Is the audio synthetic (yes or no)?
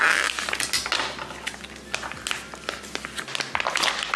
no